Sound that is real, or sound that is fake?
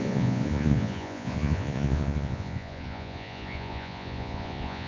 fake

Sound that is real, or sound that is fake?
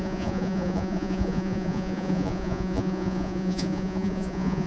fake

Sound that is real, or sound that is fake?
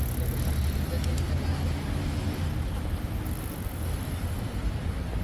real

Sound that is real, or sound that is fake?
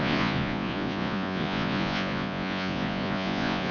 fake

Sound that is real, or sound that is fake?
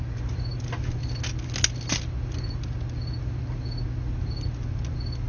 real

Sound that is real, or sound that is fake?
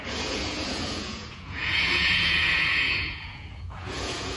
fake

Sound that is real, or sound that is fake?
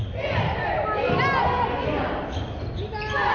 real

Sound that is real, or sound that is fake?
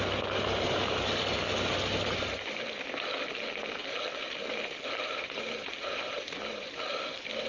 real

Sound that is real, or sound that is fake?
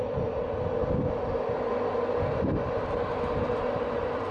real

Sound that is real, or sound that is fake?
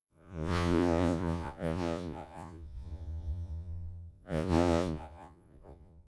fake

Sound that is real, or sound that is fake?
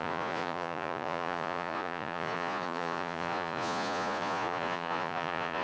fake